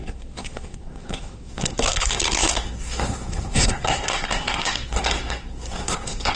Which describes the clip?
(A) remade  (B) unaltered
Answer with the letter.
A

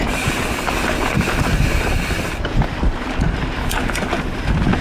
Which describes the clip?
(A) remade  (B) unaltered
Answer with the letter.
B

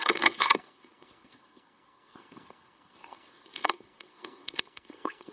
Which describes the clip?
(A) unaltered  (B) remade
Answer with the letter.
B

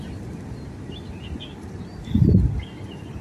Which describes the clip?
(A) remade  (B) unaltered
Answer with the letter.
B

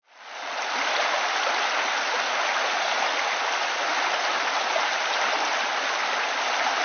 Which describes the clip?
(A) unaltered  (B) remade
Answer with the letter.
A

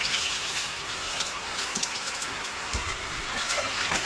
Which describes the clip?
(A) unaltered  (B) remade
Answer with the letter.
B